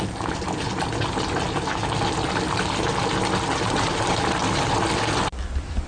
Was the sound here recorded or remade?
recorded